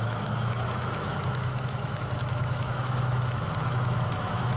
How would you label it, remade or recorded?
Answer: remade